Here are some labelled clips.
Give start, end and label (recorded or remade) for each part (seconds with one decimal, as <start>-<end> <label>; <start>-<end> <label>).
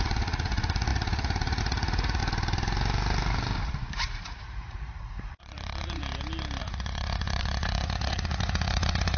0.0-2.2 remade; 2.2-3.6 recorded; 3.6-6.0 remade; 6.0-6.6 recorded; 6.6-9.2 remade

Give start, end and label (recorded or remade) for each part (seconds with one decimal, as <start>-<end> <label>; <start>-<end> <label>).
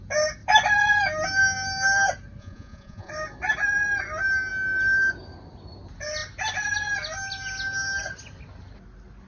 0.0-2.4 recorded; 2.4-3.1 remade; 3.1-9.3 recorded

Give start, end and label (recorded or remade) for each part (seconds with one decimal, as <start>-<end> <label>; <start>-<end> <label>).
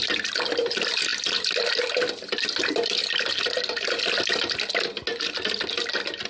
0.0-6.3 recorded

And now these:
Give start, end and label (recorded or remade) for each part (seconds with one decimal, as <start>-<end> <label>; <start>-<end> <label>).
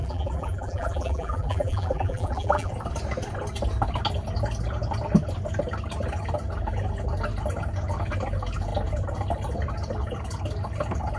0.0-2.7 remade; 2.7-11.2 recorded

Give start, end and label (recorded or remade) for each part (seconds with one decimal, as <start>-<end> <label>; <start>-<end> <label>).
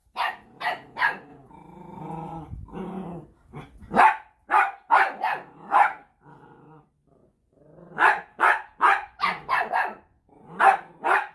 0.0-7.2 recorded; 7.2-10.6 remade; 10.6-11.3 recorded